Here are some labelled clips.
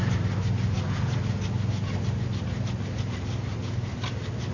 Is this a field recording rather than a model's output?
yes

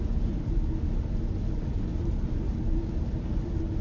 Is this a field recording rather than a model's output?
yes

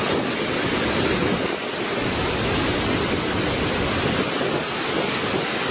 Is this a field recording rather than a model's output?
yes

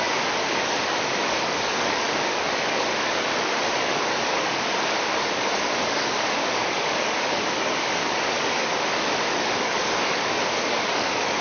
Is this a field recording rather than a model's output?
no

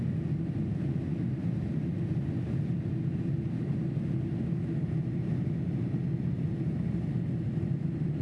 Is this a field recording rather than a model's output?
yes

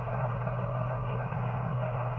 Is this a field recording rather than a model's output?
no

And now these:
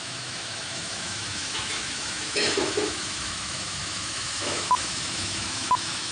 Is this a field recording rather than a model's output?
no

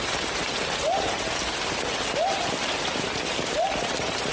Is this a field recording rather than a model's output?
yes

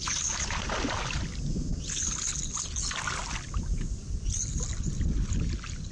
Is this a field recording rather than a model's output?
yes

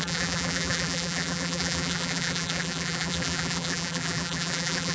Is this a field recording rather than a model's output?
no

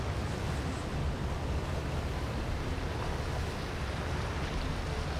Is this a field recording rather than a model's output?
yes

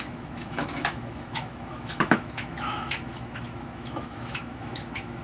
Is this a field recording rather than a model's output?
no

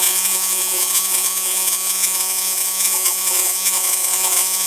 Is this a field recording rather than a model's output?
no